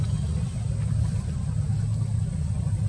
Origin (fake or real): real